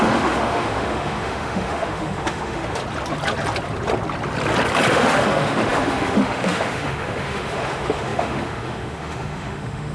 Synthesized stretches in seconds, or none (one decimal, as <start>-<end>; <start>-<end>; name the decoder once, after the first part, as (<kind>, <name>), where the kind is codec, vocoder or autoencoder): 0.0-2.8 (autoencoder, DAC-VAE); 4.9-9.9

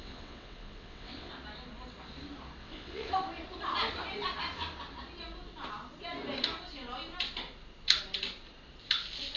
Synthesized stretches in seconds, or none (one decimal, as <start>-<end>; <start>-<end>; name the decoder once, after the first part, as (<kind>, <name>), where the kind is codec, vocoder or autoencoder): 0.0-1.3 (vocoder, WaveNeXt); 2.6-3.1

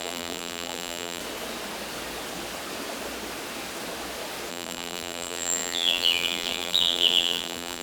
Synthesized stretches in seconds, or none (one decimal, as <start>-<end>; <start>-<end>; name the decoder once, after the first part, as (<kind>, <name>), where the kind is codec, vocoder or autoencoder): 0.0-1.2 (vocoder, BigVGAN v2); 4.5-7.8

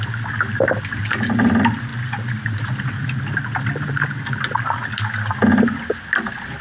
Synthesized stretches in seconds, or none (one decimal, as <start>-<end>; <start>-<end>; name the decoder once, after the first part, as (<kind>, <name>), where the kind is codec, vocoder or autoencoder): none

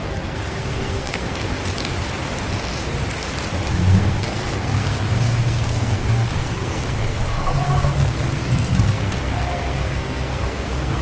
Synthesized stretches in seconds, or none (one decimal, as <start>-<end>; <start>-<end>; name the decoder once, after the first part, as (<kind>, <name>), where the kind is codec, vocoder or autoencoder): 0.0-1.6 (codec, SNAC); 3.7-11.0